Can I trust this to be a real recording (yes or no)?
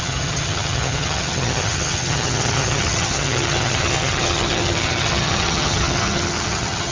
no